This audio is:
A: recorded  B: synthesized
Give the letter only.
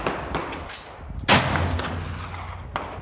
A